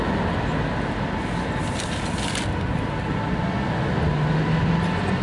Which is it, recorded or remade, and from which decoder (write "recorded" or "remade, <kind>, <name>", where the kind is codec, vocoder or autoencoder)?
recorded